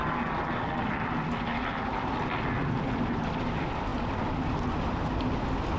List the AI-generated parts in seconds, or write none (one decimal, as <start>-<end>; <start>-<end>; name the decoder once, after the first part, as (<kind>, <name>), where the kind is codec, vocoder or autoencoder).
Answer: none